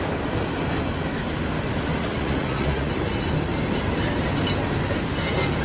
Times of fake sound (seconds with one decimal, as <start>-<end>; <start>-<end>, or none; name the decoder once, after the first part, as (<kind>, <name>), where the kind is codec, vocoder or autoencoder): 1.9-2.9 (vocoder, Vocos)